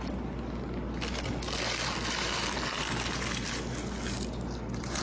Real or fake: real